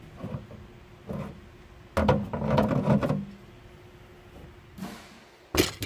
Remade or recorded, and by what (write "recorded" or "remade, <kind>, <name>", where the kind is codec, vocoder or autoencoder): recorded